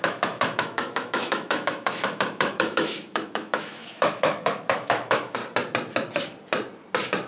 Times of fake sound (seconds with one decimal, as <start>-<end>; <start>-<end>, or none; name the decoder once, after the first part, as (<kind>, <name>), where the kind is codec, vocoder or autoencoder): 0.0-5.4 (autoencoder, DAC-VAE)